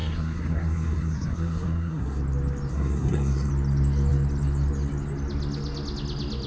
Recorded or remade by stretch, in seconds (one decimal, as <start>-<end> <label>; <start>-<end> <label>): 0.0-2.2 remade; 2.2-2.7 recorded; 2.7-3.5 remade; 3.5-6.5 recorded